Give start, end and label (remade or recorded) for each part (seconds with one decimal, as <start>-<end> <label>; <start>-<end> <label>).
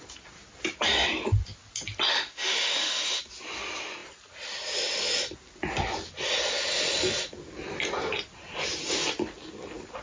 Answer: 0.0-2.1 recorded; 2.1-3.2 remade; 3.2-10.0 recorded